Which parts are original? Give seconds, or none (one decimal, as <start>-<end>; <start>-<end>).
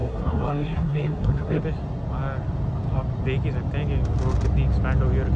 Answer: 1.6-5.4